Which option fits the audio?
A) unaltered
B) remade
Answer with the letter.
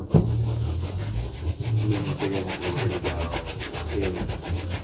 A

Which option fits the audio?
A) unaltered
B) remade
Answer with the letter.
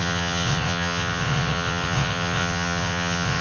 B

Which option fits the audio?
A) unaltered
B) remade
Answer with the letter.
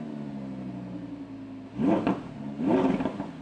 A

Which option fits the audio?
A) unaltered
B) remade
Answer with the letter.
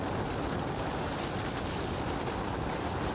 A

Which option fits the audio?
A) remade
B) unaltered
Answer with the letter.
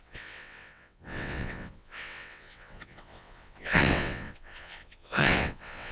A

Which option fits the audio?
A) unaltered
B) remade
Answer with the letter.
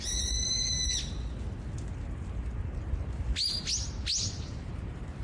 A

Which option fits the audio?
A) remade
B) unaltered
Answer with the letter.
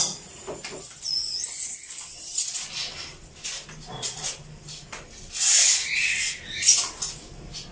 B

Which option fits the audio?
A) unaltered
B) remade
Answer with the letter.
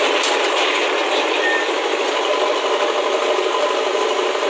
A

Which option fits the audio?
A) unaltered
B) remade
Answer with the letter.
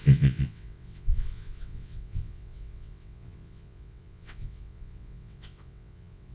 B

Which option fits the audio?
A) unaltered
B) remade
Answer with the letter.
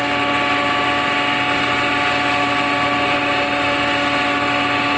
A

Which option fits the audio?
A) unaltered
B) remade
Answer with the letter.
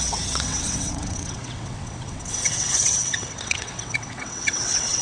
B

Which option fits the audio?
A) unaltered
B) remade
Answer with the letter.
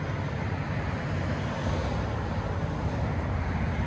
A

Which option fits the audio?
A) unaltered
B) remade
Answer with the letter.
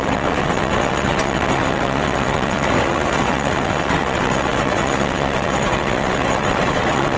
B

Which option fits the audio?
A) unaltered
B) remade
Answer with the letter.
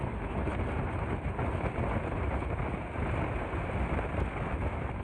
A